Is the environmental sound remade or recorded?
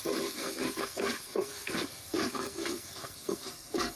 remade